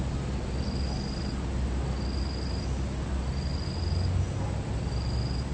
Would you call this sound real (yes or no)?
yes